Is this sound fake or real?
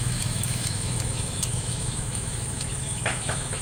fake